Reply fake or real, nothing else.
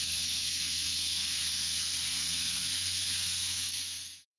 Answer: fake